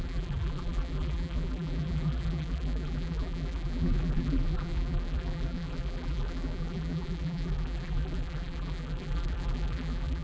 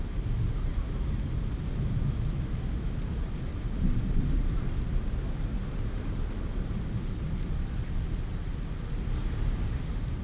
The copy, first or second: first